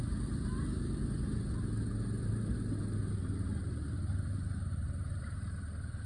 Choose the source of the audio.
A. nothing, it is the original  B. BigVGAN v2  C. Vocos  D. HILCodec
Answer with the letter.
A